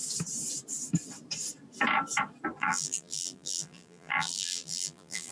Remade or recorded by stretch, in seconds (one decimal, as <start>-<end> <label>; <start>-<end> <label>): 0.0-2.6 recorded; 2.6-5.3 remade